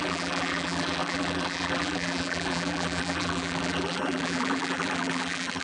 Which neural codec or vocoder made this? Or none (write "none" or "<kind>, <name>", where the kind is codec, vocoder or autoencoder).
vocoder, BigVGAN v2